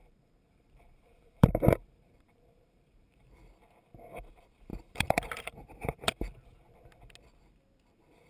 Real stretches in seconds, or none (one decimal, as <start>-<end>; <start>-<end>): 3.4-4.7; 6.3-8.3